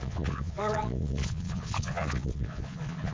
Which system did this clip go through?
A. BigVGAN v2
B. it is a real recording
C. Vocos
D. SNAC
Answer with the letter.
C